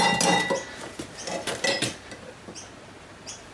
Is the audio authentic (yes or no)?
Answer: yes